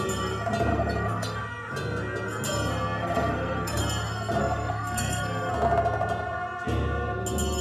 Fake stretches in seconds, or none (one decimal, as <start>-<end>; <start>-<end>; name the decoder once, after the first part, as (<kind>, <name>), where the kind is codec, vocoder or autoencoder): 0.7-1.4 (codec, SNAC); 3.0-3.8; 4.4-5.5